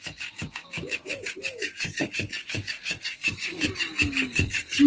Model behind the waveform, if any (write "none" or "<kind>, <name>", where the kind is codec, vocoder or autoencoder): codec, DAC